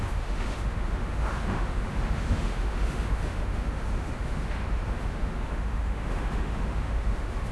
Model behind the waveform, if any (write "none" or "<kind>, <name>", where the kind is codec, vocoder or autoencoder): autoencoder, DAC-VAE